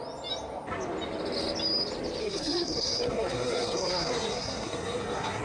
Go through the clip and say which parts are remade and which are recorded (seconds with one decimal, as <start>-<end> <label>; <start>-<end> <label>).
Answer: 0.0-2.2 recorded; 2.2-5.4 remade